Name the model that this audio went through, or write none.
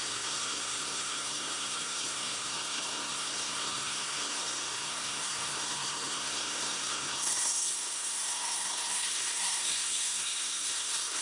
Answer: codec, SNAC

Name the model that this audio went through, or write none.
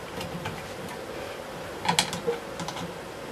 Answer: none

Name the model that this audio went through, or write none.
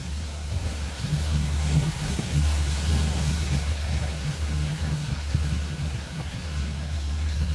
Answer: codec, SNAC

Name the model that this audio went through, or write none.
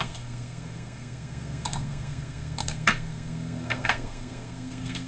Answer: codec, SNAC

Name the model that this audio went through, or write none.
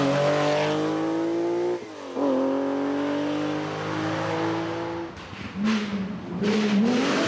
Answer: none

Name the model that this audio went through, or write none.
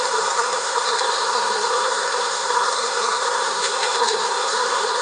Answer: codec, SNAC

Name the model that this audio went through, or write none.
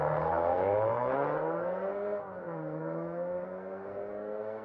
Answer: codec, SNAC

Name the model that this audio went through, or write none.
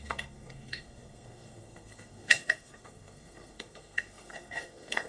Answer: codec, SNAC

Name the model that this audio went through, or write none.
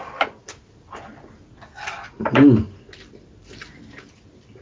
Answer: none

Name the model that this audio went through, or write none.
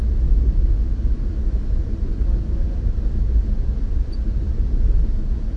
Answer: none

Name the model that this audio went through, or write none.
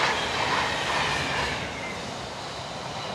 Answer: none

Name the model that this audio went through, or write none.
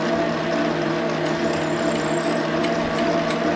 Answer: none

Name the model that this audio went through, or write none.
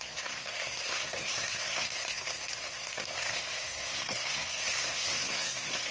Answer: codec, SNAC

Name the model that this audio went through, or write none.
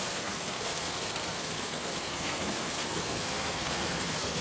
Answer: codec, SNAC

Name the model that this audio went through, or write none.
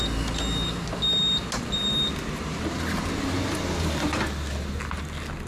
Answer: none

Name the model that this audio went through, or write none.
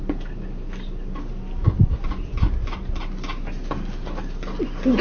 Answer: none